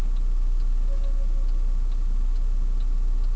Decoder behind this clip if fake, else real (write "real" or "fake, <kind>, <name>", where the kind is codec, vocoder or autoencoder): real